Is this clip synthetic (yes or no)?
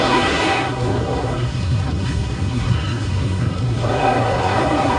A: yes